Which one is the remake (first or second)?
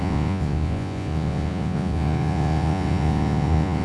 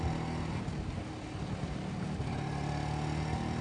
first